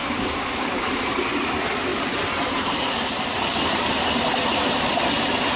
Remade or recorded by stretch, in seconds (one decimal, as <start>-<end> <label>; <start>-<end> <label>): 0.0-1.1 remade; 1.1-1.9 recorded; 1.9-3.4 remade; 3.4-5.6 recorded